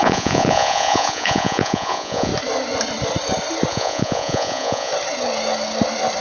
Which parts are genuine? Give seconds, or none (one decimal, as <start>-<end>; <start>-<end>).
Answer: 2.3-3.7; 4.9-6.2